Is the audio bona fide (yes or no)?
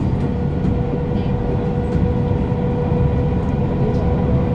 yes